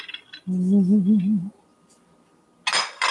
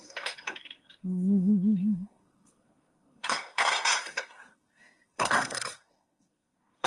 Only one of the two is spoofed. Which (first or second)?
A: second